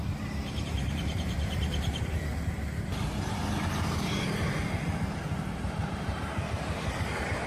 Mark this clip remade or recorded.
remade